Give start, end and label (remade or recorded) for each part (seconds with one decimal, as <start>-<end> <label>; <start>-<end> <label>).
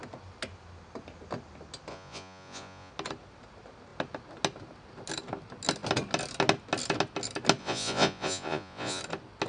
0.0-1.9 recorded; 1.9-2.9 remade; 2.9-7.6 recorded; 7.6-9.0 remade; 9.0-9.5 recorded